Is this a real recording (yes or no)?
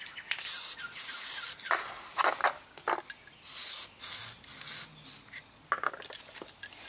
yes